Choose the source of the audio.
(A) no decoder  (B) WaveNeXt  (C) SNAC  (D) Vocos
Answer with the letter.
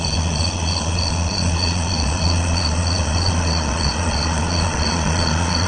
D